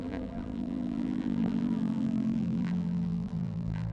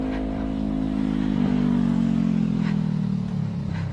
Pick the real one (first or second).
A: second